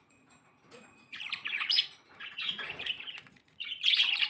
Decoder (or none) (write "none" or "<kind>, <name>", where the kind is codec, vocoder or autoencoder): vocoder, Vocos